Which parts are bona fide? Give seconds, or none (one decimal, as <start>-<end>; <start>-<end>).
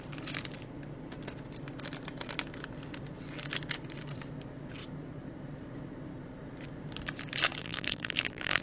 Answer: 0.0-7.6